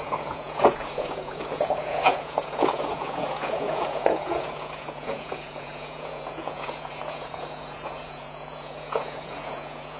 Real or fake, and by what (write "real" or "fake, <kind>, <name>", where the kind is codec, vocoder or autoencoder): fake, vocoder, Vocos